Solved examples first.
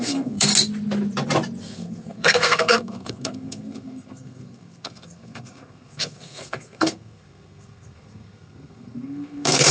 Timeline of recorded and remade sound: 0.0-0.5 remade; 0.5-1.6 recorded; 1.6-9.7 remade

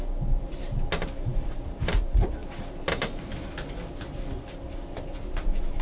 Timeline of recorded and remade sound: 0.0-5.8 recorded

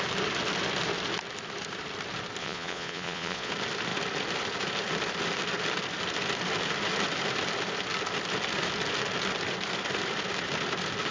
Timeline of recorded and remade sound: 0.0-2.4 recorded; 2.4-3.5 remade; 3.5-11.1 recorded

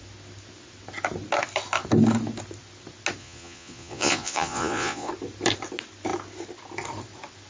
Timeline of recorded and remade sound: 0.0-3.2 recorded; 3.2-5.1 remade; 5.1-7.5 recorded

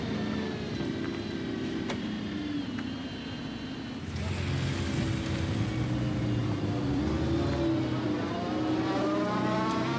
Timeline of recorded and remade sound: 0.0-6.4 recorded; 6.4-7.0 remade; 7.0-10.0 recorded

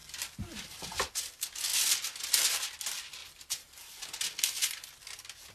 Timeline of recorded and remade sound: 0.0-1.0 remade; 1.0-3.2 recorded; 3.2-4.2 remade; 4.2-5.5 recorded

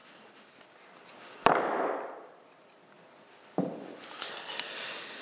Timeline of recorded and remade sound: 0.0-5.2 recorded

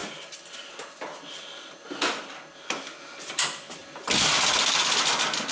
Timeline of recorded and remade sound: 0.0-5.5 recorded